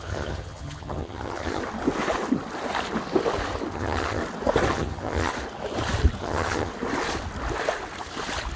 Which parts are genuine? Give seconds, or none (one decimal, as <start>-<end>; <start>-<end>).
1.6-3.7; 4.2-4.7; 5.3-6.2; 6.7-8.6